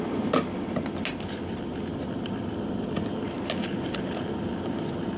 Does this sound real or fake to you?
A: real